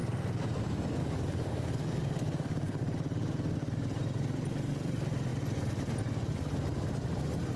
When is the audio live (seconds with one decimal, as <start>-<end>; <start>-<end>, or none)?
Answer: 0.0-1.0; 2.8-7.6

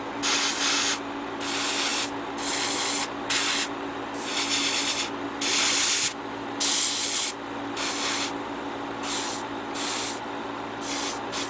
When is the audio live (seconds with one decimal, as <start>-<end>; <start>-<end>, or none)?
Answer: 0.0-11.5

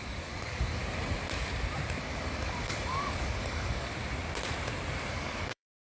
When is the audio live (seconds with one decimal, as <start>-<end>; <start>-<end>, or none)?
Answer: 0.8-2.0; 3.9-5.1